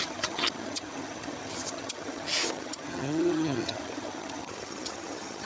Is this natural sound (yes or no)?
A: no